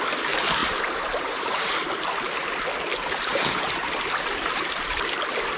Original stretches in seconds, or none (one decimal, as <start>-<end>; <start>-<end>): 0.0-0.6; 1.7-2.9; 4.6-5.6

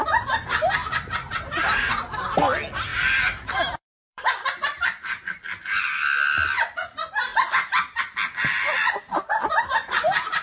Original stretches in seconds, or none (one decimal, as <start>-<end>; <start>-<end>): 0.0-0.8; 1.9-2.9; 5.5-10.4

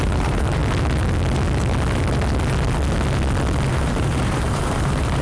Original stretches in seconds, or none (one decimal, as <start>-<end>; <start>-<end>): 0.6-3.7

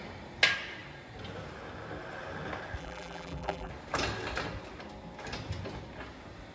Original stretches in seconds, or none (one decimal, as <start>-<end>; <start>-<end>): 0.0-2.8; 3.7-6.5

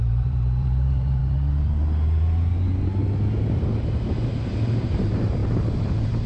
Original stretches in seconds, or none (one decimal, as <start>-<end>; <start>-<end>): 1.2-4.3

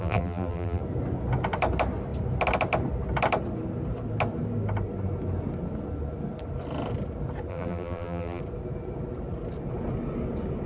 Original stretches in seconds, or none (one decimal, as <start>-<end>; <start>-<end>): 0.8-7.5; 8.4-10.7

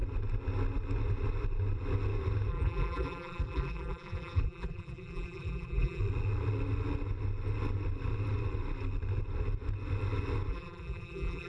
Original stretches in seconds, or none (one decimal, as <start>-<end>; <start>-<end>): 0.0-2.5; 6.0-10.5